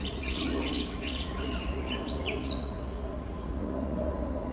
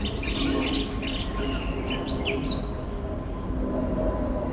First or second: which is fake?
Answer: first